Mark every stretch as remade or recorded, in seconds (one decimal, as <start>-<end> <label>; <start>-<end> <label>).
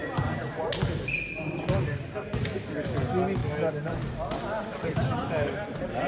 0.0-3.4 recorded; 3.4-4.1 remade; 4.1-4.7 recorded; 4.7-5.2 remade; 5.2-6.1 recorded